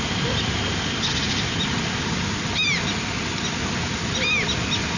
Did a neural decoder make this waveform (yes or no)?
no